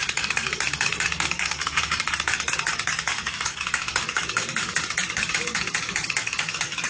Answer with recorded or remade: remade